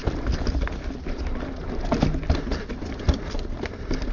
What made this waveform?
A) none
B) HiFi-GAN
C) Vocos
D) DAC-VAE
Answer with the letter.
A